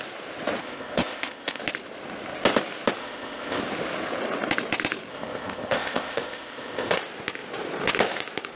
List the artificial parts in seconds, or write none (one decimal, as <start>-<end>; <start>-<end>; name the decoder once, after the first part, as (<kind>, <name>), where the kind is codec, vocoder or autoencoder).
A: 0.6-1.6 (codec, ZipCodec); 3.0-3.6; 5.1-7.0